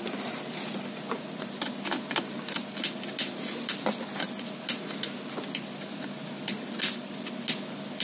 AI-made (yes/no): no